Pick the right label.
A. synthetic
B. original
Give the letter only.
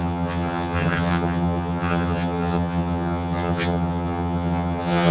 A